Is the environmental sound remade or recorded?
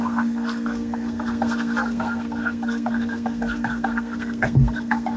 remade